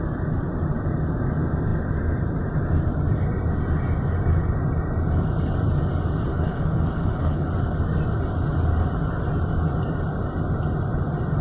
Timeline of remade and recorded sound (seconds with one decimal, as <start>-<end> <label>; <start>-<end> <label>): 0.0-6.3 recorded; 6.3-7.5 remade; 7.5-11.4 recorded